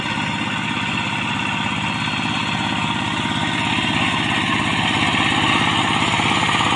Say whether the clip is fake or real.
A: real